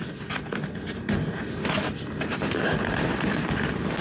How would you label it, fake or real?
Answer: real